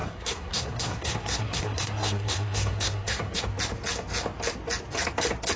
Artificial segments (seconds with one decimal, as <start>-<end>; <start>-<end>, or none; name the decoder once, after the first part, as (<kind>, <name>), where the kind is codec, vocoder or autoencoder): 0.0-3.4 (codec, SNAC)